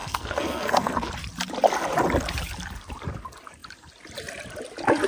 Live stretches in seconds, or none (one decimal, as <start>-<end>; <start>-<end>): 1.1-5.1